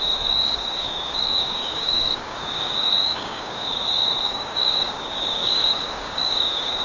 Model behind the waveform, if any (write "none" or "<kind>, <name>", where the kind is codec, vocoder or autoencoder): codec, DAC